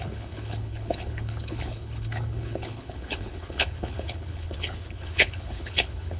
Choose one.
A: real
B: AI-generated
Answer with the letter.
B